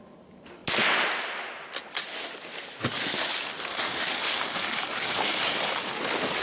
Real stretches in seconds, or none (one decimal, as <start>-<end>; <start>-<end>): 0.0-3.7; 6.0-6.4